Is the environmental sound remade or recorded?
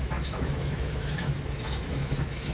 remade